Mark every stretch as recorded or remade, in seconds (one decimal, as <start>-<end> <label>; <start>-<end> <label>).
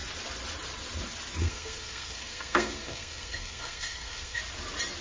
0.0-1.4 recorded; 1.4-4.4 remade; 4.4-5.0 recorded